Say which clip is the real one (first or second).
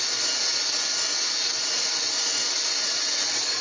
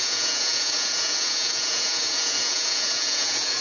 first